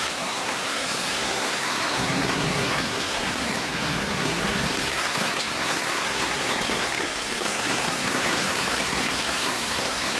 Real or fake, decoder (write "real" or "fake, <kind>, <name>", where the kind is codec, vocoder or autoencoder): fake, codec, SNAC